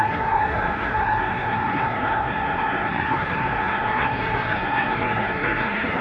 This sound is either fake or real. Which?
fake